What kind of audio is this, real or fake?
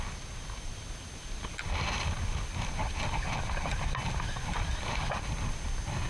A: real